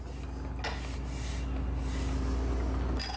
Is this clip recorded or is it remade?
recorded